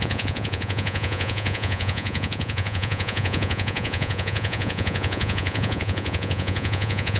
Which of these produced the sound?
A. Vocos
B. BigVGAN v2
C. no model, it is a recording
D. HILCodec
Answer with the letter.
A